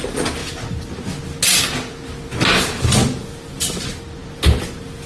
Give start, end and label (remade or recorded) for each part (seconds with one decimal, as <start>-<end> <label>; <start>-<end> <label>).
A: 0.0-5.1 recorded